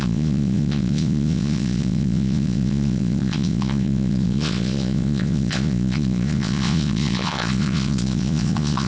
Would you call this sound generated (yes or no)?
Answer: yes